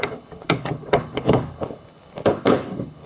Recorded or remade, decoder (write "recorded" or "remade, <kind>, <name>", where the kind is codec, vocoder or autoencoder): remade, codec, HILCodec